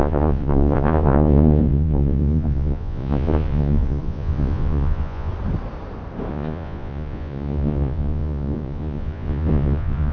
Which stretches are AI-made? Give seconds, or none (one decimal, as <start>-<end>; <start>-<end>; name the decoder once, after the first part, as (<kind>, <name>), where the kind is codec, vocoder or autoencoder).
0.0-5.3 (vocoder, Vocos); 6.3-10.1